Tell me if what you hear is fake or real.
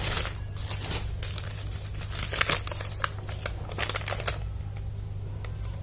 real